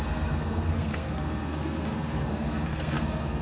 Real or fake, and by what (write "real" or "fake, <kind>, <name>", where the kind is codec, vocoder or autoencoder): fake, codec, SNAC